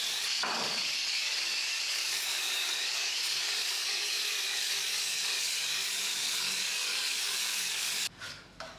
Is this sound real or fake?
fake